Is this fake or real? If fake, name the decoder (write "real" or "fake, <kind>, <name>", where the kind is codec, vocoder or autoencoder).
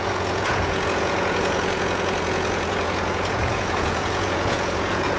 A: fake, vocoder, Vocos